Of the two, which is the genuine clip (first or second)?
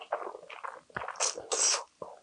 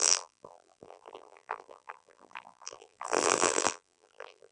first